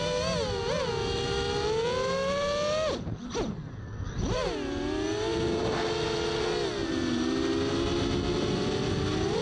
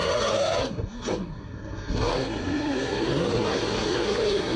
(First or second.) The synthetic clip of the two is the second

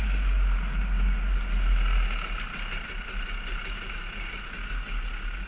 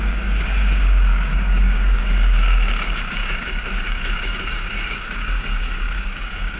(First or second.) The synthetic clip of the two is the second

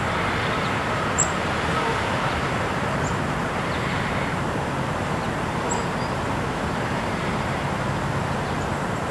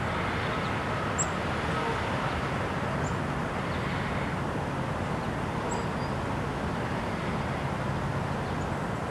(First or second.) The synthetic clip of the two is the first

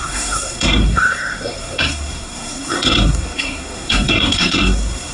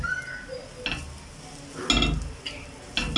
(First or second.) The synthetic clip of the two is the first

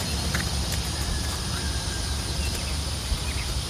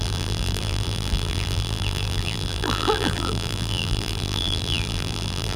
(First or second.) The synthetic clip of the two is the second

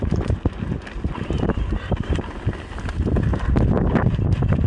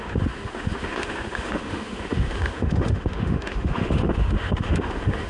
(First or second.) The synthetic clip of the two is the second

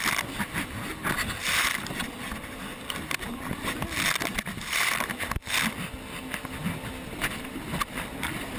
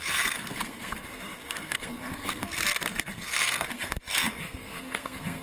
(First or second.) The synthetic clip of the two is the second